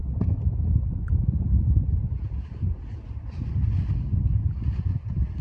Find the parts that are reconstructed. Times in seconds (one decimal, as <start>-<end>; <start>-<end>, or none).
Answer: none